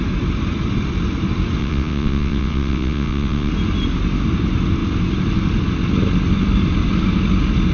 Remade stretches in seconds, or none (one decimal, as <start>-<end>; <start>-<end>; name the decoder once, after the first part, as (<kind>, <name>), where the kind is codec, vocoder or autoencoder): 1.6-3.5 (vocoder, WaveNeXt)